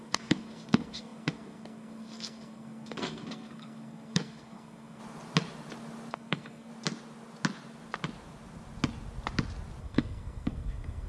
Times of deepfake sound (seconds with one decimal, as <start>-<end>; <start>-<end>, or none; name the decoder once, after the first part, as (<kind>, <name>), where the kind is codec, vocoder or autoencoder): 0.0-5.0 (codec, SNAC); 6.1-6.7; 9.8-11.1